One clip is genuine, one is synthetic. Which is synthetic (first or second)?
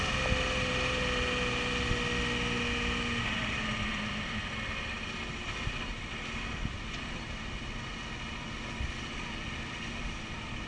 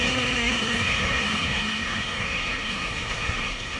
second